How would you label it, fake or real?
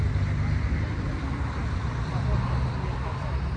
fake